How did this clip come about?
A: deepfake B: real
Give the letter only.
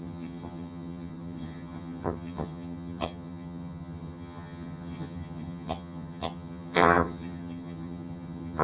A